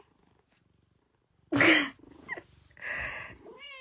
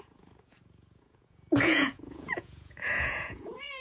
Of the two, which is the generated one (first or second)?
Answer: second